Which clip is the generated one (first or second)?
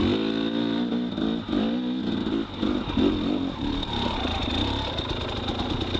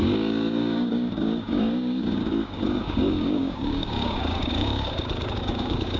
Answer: second